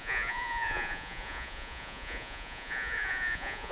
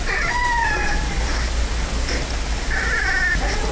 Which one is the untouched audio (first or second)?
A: second